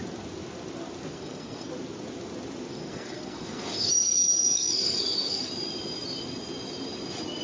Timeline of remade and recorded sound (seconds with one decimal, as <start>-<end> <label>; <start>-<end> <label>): 0.0-1.1 recorded; 1.1-1.7 remade; 1.7-2.7 recorded; 2.7-5.5 remade; 5.5-7.4 recorded